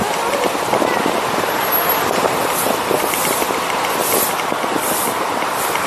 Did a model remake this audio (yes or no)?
no